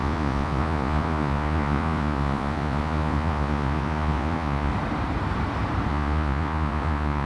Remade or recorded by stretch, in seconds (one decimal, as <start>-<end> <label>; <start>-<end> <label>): 0.0-4.7 remade; 4.7-5.9 recorded; 5.9-7.3 remade